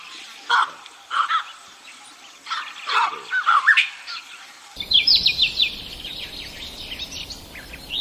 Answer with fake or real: fake